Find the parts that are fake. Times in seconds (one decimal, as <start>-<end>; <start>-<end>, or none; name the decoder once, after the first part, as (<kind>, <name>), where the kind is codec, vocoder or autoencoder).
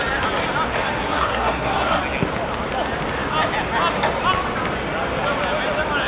1.0-2.0 (codec, SNAC)